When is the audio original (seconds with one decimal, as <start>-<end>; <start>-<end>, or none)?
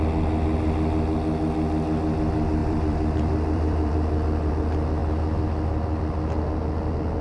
0.0-2.6; 4.5-7.2